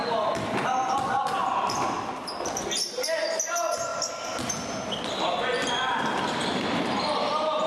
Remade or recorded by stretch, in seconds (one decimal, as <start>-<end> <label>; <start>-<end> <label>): 0.0-7.7 recorded